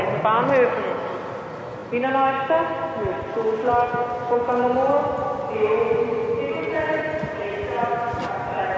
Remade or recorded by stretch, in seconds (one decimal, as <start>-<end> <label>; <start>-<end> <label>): 0.0-8.8 recorded